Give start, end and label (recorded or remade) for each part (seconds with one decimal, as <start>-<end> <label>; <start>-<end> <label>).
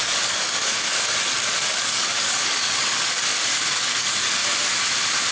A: 0.0-4.4 remade; 4.4-5.3 recorded